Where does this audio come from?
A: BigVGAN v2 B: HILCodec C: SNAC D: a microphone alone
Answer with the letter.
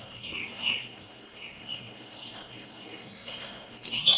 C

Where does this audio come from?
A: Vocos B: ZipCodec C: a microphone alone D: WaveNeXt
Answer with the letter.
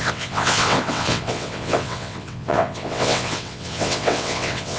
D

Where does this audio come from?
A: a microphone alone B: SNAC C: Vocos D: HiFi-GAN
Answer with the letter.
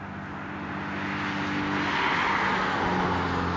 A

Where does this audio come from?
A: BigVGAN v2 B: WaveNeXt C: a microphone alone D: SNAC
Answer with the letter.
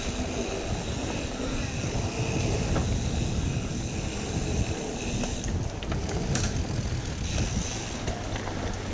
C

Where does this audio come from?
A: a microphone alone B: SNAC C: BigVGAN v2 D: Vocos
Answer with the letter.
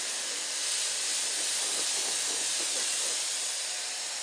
C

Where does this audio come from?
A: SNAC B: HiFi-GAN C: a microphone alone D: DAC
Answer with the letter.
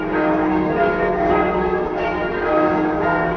D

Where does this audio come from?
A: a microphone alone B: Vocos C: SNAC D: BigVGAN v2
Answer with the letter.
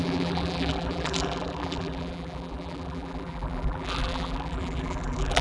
D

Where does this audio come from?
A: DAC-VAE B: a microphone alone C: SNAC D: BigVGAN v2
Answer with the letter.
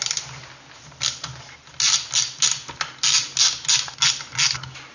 B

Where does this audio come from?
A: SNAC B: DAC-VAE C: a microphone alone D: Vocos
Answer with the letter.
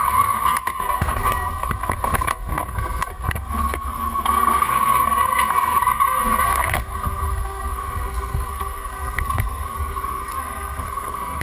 A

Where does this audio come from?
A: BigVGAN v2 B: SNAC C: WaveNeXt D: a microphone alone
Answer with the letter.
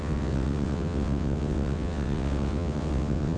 C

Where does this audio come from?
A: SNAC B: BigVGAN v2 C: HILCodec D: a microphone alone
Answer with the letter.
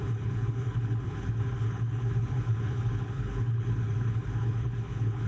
C